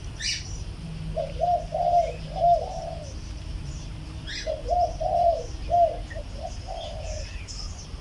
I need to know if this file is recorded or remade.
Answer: remade